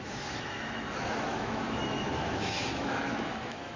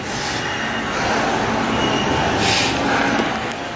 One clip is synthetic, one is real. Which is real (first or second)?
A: second